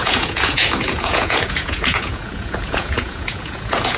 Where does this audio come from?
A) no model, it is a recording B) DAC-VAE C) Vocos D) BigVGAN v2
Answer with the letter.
C